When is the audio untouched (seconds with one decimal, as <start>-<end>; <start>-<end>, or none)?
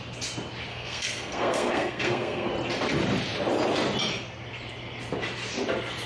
0.0-0.7; 2.5-6.1